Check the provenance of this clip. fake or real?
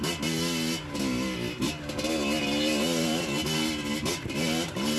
real